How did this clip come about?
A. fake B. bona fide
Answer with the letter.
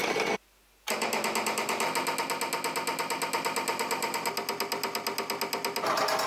B